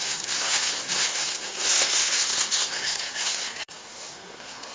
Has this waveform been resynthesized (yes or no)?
yes